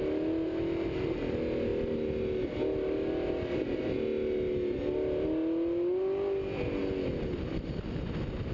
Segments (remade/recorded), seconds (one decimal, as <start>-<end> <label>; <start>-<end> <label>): 0.0-8.5 recorded